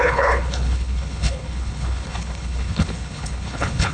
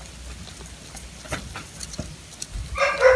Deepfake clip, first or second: first